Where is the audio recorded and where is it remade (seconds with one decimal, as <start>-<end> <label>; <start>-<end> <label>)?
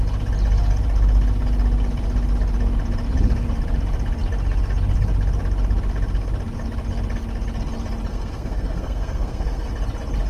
0.0-8.1 recorded; 8.1-9.7 remade; 9.7-10.3 recorded